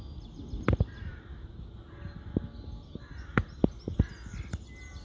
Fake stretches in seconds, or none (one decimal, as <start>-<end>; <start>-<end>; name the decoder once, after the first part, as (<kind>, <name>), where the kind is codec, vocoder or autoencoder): none